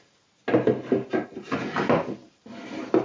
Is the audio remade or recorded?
recorded